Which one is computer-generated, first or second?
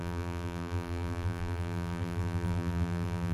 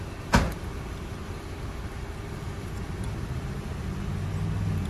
first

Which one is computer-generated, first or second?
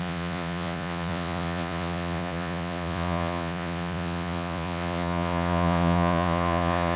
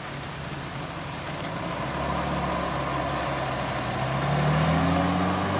first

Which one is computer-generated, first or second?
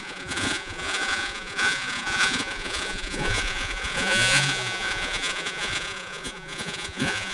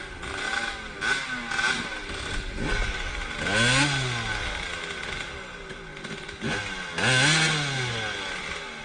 first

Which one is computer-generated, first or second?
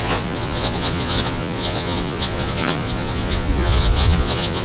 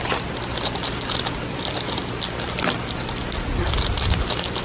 first